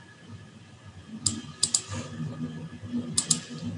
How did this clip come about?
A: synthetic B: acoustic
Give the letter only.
B